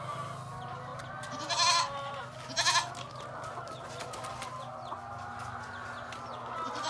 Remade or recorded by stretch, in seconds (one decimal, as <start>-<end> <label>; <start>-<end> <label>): 0.0-6.9 recorded